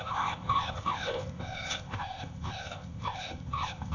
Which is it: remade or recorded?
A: remade